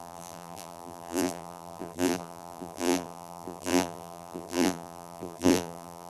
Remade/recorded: remade